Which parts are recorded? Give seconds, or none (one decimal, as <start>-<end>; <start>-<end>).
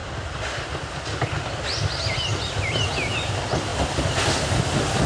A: 0.8-3.7; 4.2-5.1